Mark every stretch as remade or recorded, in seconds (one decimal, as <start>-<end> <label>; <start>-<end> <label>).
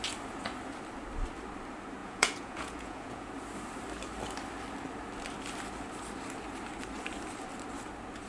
0.0-2.0 recorded; 2.0-3.3 remade; 3.3-8.3 recorded